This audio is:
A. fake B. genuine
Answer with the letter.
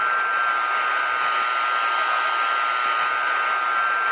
B